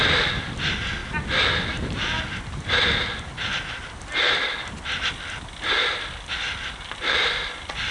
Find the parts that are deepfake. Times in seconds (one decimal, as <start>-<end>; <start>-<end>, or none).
none